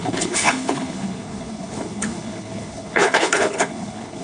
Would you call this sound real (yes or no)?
no